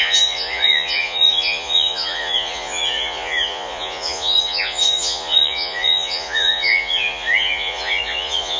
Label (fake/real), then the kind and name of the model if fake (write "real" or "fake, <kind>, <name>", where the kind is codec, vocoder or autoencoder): fake, vocoder, Vocos